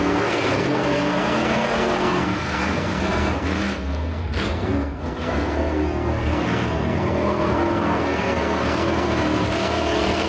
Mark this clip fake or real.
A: fake